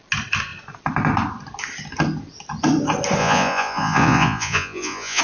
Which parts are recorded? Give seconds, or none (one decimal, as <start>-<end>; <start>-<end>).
0.0-3.2

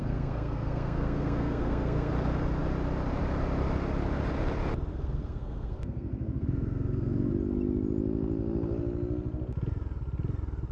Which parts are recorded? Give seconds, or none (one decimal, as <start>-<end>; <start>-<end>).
2.1-4.9; 7.3-10.7

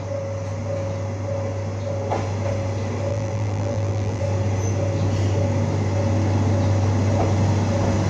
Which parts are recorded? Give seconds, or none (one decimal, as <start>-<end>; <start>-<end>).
0.0-3.1; 4.2-8.1

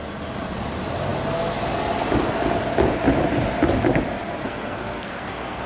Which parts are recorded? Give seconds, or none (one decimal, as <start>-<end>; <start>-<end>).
0.0-4.4